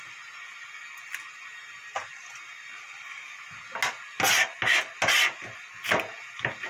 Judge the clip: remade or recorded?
recorded